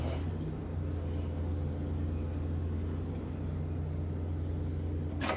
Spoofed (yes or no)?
no